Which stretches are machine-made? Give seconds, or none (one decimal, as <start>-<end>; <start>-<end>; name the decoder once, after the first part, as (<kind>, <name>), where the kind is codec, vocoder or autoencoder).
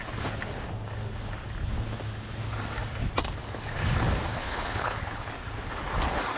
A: 4.3-5.3 (codec, HILCodec)